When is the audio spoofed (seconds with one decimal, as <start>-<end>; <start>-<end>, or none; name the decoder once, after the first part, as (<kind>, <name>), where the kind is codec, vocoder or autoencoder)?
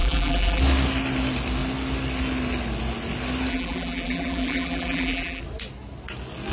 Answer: 0.0-0.6 (vocoder, BigVGAN v2); 3.5-5.4